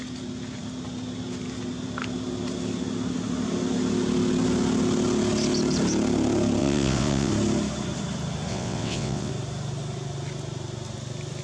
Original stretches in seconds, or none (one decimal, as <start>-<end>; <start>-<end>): 0.0-6.6; 7.3-8.5; 9.3-11.4